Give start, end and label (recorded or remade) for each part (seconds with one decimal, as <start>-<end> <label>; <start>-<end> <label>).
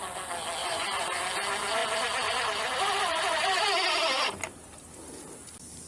0.0-0.6 recorded; 0.6-1.2 remade; 1.2-5.9 recorded